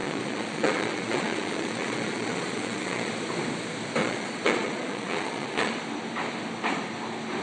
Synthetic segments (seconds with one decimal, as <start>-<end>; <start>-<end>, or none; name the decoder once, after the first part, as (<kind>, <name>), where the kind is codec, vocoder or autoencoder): 0.0-3.1 (vocoder, Vocos); 4.0-5.7